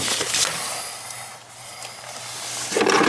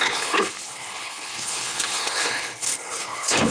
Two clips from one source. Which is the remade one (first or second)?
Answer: second